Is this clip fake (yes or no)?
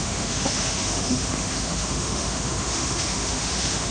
yes